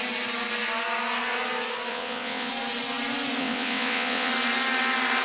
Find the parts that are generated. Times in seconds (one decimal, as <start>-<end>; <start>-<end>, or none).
1.9-2.5; 3.4-4.3